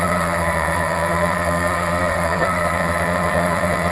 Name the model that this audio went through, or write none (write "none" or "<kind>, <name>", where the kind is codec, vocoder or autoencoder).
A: vocoder, WaveNeXt